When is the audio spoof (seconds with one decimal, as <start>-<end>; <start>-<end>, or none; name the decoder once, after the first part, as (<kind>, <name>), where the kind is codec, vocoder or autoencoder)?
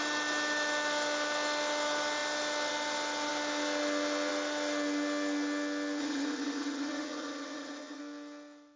6.0-8.0 (vocoder, HiFi-GAN)